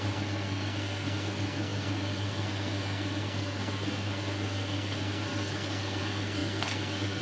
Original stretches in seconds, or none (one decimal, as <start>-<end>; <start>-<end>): none